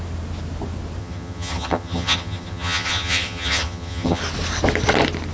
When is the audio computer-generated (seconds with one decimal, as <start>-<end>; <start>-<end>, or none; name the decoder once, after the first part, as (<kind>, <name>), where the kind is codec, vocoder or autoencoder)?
1.0-4.2 (vocoder, HiFi-GAN)

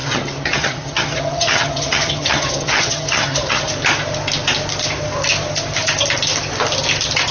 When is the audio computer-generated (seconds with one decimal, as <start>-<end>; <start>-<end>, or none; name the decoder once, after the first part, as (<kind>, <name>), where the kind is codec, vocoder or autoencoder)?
0.0-3.7 (vocoder, HiFi-GAN)

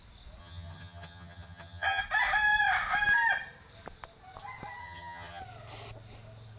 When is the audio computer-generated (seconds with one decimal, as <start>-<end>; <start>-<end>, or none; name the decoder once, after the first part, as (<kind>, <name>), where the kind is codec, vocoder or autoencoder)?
0.4-2.0 (vocoder, HiFi-GAN); 4.8-5.4

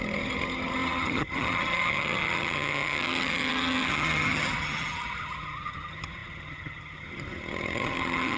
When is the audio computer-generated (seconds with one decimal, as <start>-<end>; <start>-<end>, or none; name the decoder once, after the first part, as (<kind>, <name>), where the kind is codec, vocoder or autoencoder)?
0.0-8.4 (vocoder, HiFi-GAN)

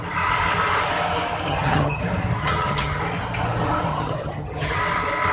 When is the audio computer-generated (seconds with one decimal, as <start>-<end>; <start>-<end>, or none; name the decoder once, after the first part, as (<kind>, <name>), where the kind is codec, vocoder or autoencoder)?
1.5-2.0 (vocoder, HiFi-GAN); 2.4-3.0; 3.9-4.8

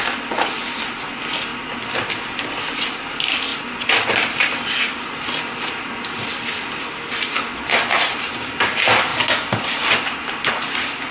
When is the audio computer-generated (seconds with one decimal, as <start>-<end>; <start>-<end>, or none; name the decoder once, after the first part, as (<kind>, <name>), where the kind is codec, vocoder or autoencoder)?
none

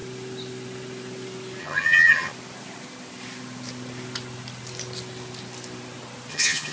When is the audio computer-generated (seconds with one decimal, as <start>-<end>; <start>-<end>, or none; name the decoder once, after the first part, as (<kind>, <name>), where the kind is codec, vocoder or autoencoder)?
1.6-2.3 (vocoder, HiFi-GAN); 6.3-6.7